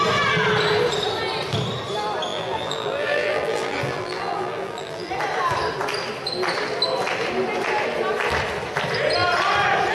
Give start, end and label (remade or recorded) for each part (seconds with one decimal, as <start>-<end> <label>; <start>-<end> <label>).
0.0-2.3 recorded; 2.3-5.1 remade; 5.1-9.9 recorded